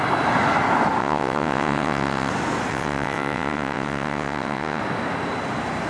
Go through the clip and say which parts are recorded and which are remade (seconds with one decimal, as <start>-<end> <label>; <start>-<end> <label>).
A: 0.0-1.0 recorded; 1.0-2.3 remade; 2.3-2.7 recorded; 2.7-4.8 remade; 4.8-5.9 recorded